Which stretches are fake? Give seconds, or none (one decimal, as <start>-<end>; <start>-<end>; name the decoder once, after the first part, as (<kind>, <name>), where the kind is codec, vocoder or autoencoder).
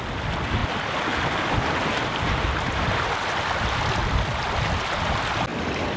5.5-6.0 (vocoder, BigVGAN v2)